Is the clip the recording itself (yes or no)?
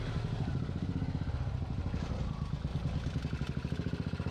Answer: yes